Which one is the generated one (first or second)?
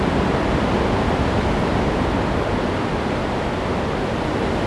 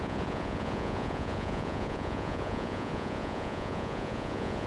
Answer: second